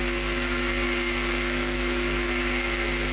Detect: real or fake fake